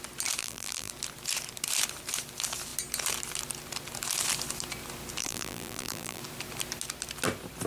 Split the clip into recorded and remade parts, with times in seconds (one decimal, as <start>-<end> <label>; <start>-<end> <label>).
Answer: 0.0-0.4 recorded; 0.4-0.9 remade; 0.9-5.2 recorded; 5.2-6.2 remade; 6.2-7.7 recorded